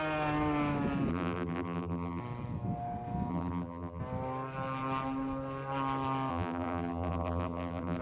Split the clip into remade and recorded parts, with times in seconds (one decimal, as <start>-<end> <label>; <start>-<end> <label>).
0.0-1.1 recorded; 1.1-2.2 remade; 2.2-3.3 recorded; 3.3-4.0 remade; 4.0-6.3 recorded; 6.3-8.0 remade